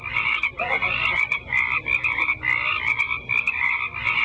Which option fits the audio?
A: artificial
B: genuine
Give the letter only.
B